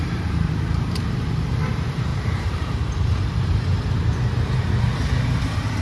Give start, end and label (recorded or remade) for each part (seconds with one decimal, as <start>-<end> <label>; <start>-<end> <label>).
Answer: 0.0-5.8 remade